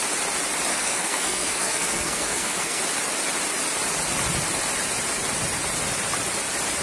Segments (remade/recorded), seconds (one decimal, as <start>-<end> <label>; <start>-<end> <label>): 0.0-0.7 recorded; 0.7-2.8 remade; 2.8-6.8 recorded